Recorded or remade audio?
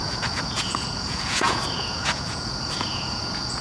remade